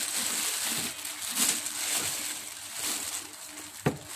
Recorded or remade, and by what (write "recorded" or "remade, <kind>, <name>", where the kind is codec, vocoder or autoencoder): recorded